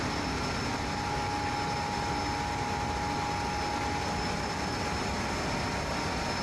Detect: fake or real real